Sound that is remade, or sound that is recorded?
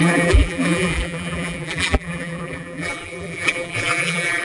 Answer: remade